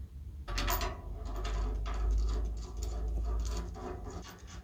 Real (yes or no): yes